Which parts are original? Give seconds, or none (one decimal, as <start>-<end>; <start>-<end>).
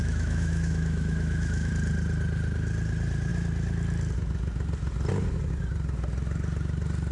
1.7-7.1